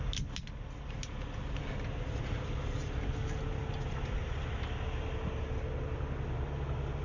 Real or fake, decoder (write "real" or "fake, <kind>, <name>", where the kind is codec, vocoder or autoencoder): real